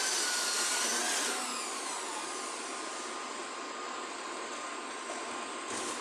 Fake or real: real